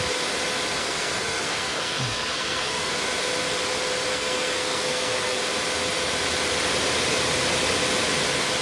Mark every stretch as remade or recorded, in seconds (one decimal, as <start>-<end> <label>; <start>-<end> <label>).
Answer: 0.0-0.8 recorded; 0.8-2.9 remade; 2.9-4.1 recorded; 4.1-5.4 remade; 5.4-8.6 recorded